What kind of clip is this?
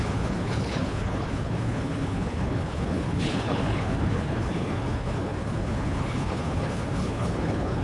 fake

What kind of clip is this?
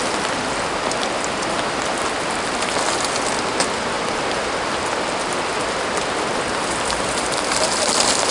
real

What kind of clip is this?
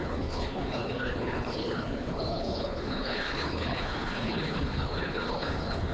fake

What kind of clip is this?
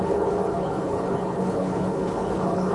fake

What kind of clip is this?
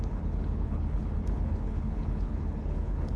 fake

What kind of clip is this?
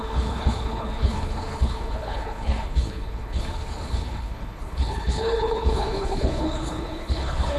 fake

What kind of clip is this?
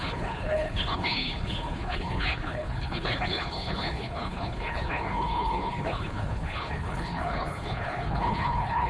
fake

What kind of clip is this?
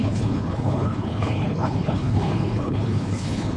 fake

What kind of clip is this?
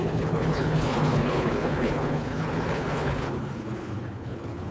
fake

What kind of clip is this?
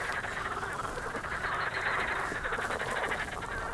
real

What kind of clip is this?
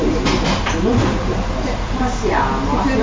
real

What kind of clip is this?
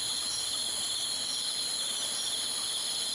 real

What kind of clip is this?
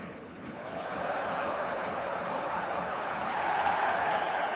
fake